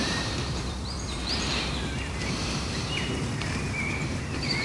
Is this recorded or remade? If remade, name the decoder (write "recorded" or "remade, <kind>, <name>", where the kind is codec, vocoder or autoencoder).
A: remade, vocoder, BigVGAN v2